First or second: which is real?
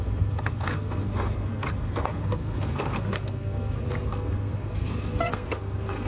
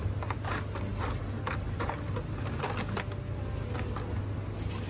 second